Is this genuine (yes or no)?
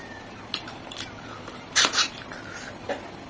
yes